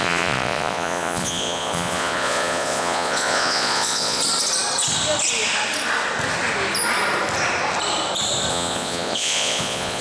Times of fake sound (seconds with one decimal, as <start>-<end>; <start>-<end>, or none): 0.0-4.2; 8.5-10.0